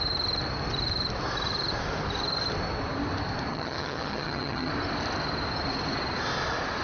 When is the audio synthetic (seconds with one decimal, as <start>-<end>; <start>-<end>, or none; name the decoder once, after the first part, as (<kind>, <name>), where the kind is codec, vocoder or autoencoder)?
3.5-4.7 (vocoder, HiFi-GAN)